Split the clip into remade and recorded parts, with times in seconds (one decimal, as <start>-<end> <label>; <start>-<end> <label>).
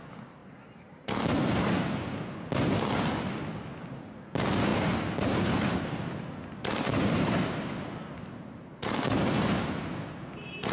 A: 0.0-10.7 recorded